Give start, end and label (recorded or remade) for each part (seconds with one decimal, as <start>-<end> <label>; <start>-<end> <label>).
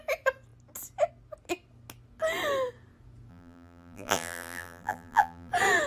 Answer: 0.0-3.3 recorded; 3.3-5.5 remade; 5.5-5.9 recorded